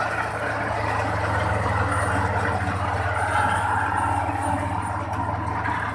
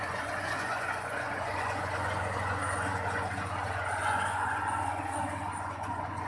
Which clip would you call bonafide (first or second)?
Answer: first